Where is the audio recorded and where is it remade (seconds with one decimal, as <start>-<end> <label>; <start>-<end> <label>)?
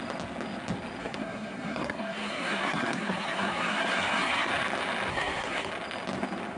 0.0-1.0 recorded; 1.0-4.5 remade; 4.5-5.1 recorded; 5.1-5.7 remade; 5.7-6.6 recorded